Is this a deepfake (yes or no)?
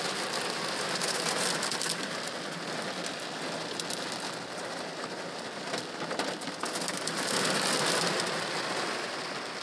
no